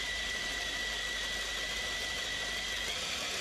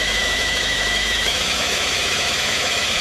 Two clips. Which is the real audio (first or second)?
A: first